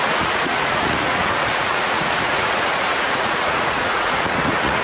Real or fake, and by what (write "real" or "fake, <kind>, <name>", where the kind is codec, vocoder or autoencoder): fake, vocoder, Vocos